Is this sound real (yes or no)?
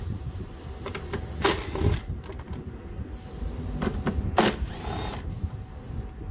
yes